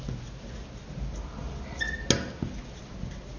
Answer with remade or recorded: recorded